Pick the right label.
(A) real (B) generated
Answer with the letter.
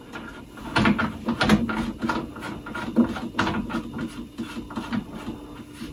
A